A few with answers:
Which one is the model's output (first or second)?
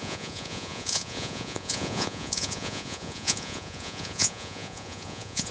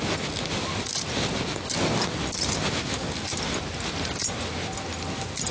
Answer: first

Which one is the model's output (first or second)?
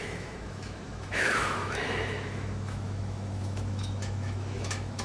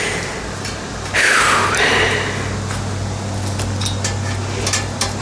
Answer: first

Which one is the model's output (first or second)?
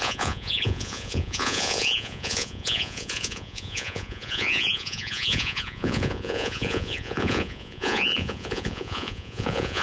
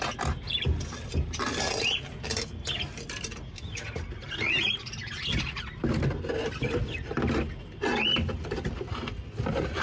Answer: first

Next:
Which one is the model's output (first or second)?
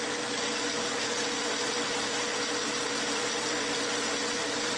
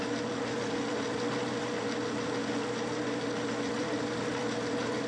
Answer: second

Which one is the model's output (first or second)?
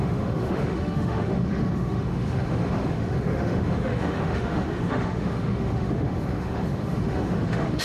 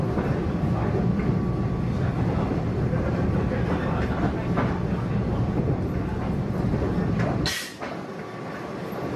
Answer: first